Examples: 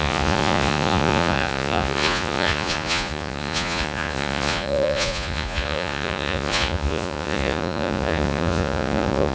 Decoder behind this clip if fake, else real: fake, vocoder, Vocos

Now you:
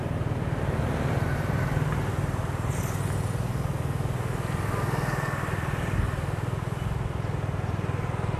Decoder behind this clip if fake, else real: real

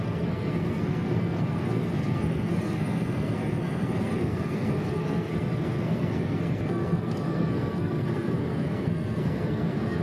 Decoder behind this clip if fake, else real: fake, codec, SNAC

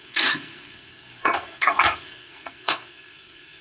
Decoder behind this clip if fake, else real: fake, codec, SNAC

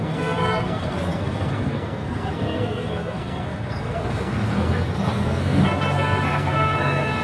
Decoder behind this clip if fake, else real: fake, codec, SNAC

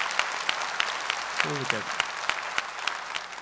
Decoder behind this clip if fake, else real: real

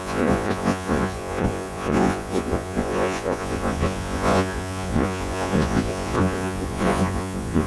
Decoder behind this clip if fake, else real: fake, vocoder, Vocos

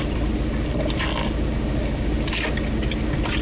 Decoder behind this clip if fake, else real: real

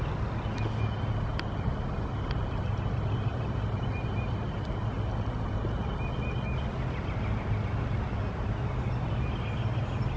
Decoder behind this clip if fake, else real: real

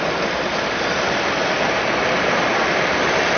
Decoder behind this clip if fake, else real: real